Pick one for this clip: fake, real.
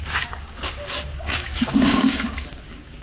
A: fake